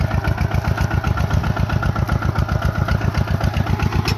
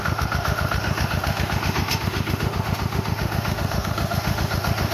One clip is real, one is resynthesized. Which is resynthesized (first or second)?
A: second